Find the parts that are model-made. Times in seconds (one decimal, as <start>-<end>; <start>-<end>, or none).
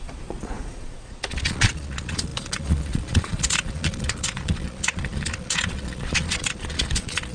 0.0-7.3